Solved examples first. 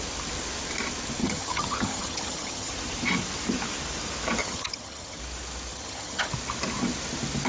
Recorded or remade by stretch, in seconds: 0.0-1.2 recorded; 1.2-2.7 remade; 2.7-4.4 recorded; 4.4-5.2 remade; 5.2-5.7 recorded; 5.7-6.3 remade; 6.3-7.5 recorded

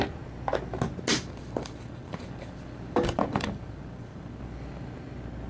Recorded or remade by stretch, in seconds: 0.0-1.1 recorded; 1.1-4.4 remade; 4.4-5.5 recorded

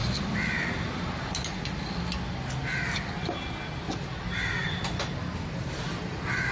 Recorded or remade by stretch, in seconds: 0.0-6.5 recorded

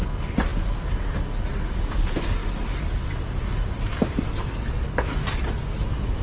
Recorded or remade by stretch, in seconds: 0.0-6.2 recorded

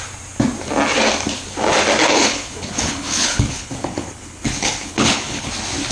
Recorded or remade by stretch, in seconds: 0.0-2.0 recorded; 2.0-5.5 remade; 5.5-5.9 recorded